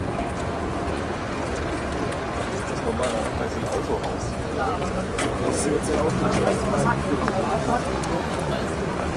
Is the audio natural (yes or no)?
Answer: no